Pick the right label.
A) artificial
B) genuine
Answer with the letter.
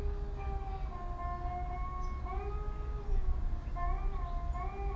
B